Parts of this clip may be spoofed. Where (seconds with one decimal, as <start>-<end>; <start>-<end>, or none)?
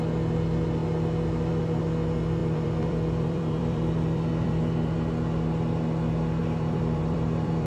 2.4-4.6; 6.4-7.7